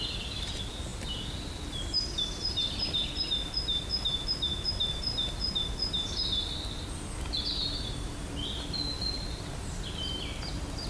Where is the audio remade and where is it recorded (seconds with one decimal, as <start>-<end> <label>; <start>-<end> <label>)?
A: 0.0-10.9 recorded